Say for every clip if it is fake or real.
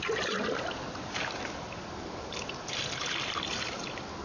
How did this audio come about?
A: fake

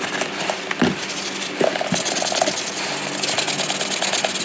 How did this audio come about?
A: real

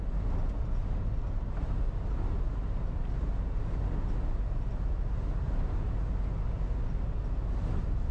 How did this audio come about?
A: real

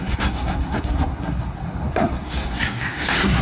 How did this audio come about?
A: fake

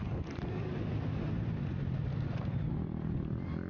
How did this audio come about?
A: real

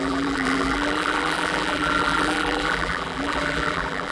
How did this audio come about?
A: fake